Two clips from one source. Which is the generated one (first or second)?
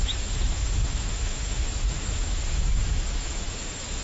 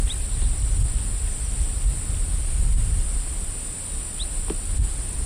first